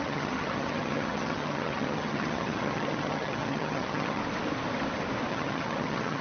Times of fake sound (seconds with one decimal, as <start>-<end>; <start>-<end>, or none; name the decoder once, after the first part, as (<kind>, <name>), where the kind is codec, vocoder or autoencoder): 0.0-4.2 (vocoder, HiFi-GAN); 5.3-6.2